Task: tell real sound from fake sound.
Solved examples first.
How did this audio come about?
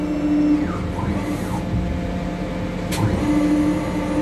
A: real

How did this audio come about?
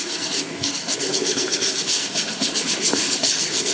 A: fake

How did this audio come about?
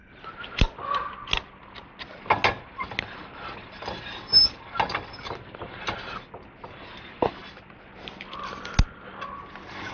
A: real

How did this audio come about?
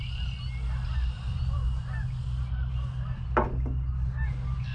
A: real